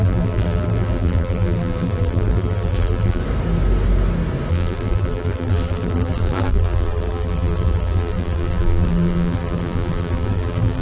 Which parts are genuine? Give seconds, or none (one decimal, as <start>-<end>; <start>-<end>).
3.2-4.5